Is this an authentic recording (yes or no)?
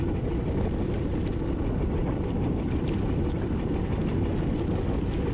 yes